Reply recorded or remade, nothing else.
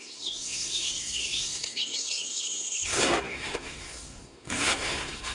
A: remade